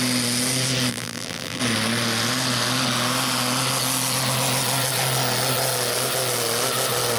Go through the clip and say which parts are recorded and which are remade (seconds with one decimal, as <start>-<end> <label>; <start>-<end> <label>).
0.0-0.9 recorded; 0.9-1.6 remade; 1.6-7.2 recorded